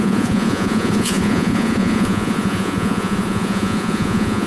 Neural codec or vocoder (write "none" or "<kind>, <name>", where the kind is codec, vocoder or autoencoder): vocoder, Vocos